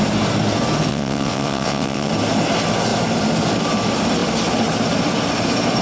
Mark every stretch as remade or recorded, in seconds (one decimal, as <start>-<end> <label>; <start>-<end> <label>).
0.0-0.9 recorded; 0.9-2.1 remade; 2.1-5.8 recorded